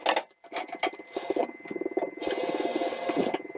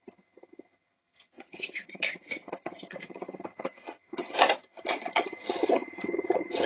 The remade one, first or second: second